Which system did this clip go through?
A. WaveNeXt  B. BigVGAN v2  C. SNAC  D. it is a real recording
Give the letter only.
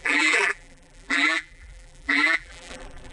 B